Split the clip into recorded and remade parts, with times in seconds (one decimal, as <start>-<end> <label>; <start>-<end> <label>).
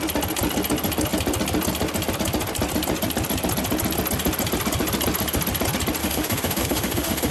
0.0-6.0 recorded; 6.0-7.3 remade